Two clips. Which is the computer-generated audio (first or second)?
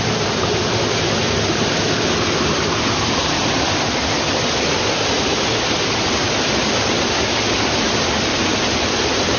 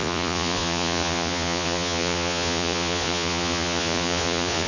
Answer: second